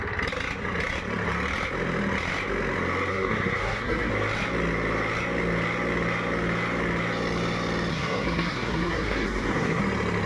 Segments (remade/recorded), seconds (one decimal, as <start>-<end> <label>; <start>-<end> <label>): 0.0-3.1 recorded; 3.1-4.1 remade; 4.1-7.9 recorded; 7.9-9.8 remade; 9.8-10.3 recorded